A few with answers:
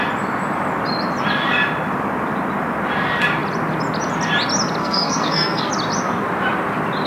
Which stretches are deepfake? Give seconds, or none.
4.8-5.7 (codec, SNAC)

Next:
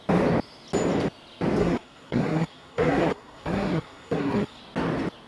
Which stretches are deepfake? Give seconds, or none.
1.6-4.6 (codec, SNAC)

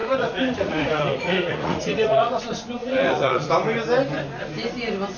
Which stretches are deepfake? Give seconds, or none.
0.0-2.4 (vocoder, Vocos); 2.8-3.5